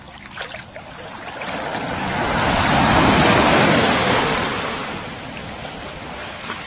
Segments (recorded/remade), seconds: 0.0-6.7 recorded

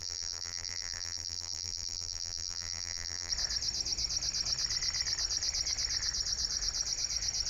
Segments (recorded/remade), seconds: 0.0-3.3 remade; 3.3-7.5 recorded

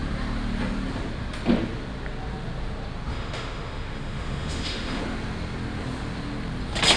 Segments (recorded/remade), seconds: 0.0-3.1 recorded; 3.1-5.0 remade; 5.0-7.0 recorded

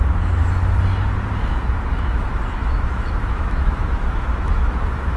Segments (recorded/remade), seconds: 0.0-0.4 remade; 0.4-2.1 recorded; 2.1-5.2 remade

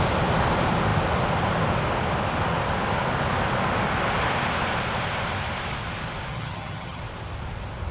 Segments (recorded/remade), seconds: 0.0-6.3 recorded; 6.3-7.0 remade; 7.0-7.9 recorded

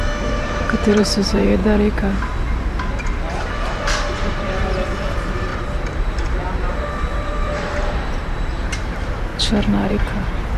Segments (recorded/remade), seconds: 0.0-1.6 remade; 1.6-3.5 recorded; 3.5-9.3 remade; 9.3-9.9 recorded; 9.9-10.6 remade

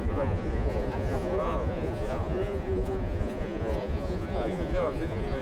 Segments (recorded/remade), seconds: 0.0-5.4 remade

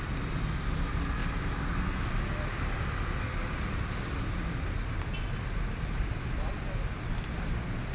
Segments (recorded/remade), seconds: 0.0-7.9 recorded